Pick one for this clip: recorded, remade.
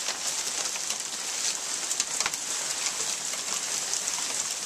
recorded